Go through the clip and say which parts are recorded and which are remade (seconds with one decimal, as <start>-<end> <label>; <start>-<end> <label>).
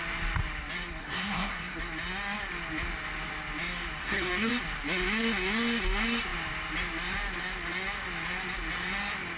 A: 0.0-1.0 recorded; 1.0-1.8 remade; 1.8-4.0 recorded; 4.0-4.5 remade; 4.5-9.4 recorded